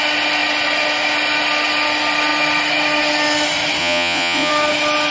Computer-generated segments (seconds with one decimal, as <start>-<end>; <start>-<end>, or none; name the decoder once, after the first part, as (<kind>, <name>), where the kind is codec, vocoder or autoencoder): 3.8-4.5 (vocoder, Vocos)